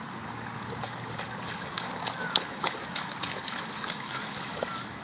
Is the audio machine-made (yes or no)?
yes